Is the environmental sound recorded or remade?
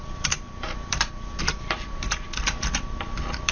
remade